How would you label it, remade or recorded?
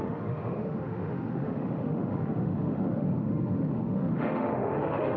remade